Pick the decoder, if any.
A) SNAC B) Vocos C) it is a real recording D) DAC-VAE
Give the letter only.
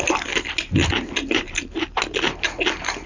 C